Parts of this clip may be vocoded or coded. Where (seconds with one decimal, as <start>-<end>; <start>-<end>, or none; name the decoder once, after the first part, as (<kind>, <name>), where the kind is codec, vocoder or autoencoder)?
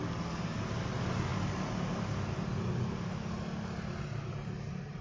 none